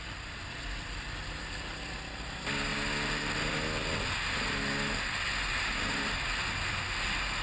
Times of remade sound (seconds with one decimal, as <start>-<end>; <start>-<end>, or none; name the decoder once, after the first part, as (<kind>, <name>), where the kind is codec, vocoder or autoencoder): none